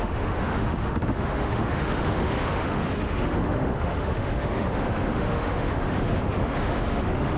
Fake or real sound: fake